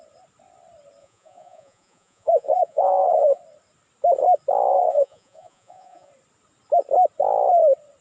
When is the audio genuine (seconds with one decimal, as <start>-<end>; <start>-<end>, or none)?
0.0-1.0; 3.4-4.7; 6.1-8.0